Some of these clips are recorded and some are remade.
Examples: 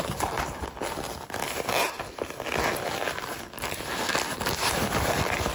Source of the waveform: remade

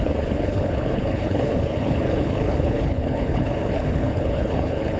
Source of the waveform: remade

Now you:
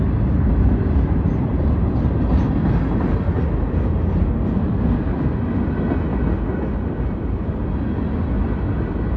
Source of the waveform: recorded